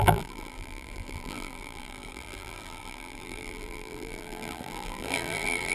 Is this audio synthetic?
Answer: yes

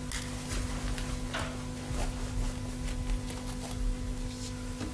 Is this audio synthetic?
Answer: no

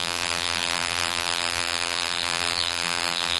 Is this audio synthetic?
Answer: yes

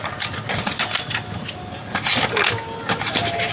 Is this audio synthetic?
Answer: no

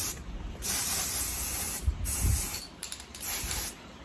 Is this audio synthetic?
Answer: yes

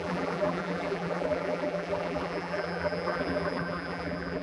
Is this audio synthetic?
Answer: yes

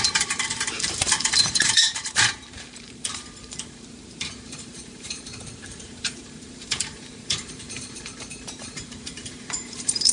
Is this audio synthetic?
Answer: yes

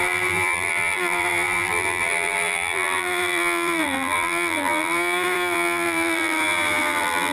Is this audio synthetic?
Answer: yes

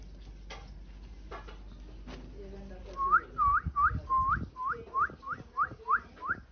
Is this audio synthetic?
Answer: no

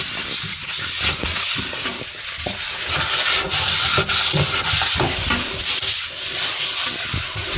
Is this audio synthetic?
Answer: no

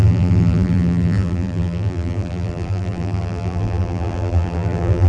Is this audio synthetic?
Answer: yes